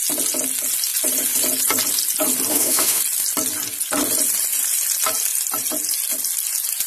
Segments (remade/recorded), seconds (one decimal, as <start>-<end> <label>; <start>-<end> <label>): 0.0-2.5 recorded; 2.5-3.0 remade; 3.0-6.9 recorded